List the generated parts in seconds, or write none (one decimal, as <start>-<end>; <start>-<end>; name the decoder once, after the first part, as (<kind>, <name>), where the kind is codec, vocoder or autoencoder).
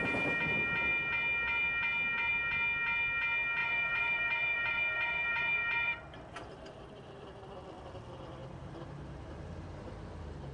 3.6-6.5 (vocoder, BigVGAN v2); 8.4-9.9